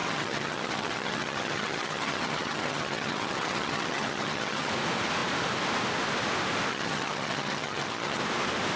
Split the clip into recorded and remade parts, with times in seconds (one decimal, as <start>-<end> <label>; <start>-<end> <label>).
0.0-4.7 remade; 4.7-6.7 recorded; 6.7-8.2 remade; 8.2-8.8 recorded